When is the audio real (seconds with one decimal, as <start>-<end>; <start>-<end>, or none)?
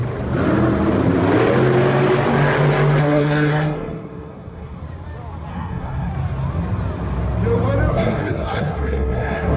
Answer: 0.0-3.0; 4.8-5.5; 6.1-7.9